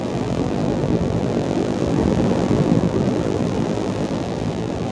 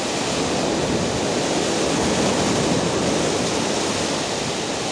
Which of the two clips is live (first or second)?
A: second